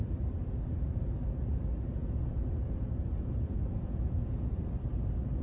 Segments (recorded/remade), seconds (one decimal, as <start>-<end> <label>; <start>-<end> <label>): 0.0-2.0 recorded; 2.0-4.6 remade; 4.6-5.4 recorded